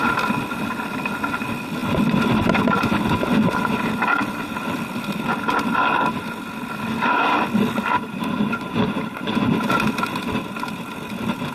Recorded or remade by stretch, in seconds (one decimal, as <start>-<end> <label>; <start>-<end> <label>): 0.0-11.5 recorded